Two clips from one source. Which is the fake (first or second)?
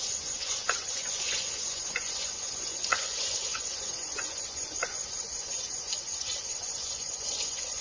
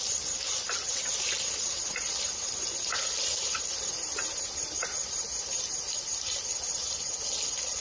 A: first